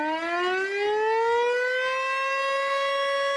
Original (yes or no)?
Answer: yes